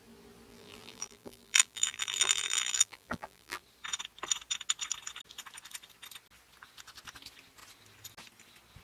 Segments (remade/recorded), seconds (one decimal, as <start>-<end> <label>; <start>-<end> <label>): 0.0-0.5 recorded; 0.5-3.6 remade; 3.6-8.8 recorded